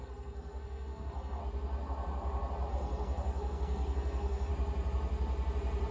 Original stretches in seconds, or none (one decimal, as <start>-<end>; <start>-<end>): 1.4-2.7; 4.5-5.9